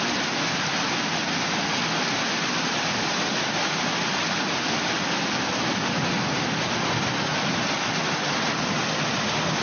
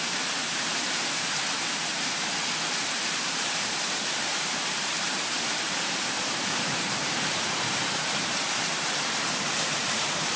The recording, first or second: first